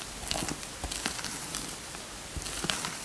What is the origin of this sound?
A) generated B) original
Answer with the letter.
A